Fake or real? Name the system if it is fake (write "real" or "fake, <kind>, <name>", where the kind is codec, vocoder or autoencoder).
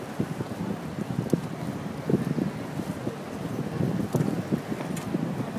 real